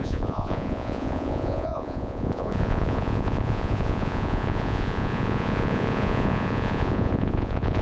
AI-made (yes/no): yes